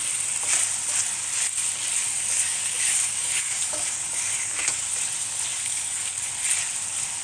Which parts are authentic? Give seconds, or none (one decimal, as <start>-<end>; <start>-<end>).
0.0-2.0; 4.9-5.5; 6.3-7.2